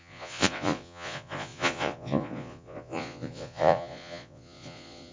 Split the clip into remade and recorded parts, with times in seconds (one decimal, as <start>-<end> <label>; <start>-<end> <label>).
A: 0.0-5.1 remade